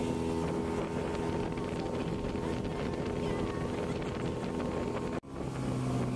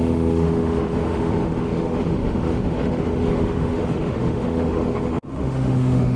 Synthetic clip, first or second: second